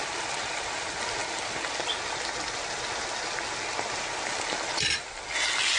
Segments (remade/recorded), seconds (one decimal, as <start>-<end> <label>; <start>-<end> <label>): 0.0-5.8 recorded